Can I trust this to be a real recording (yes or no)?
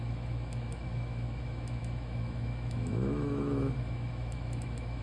no